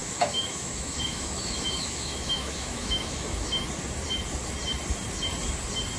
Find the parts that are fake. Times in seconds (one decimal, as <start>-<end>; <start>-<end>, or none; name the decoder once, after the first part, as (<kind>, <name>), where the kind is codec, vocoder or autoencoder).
0.0-3.6 (autoencoder, DAC-VAE)